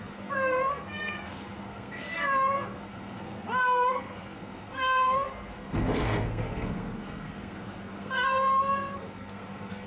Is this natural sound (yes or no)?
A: no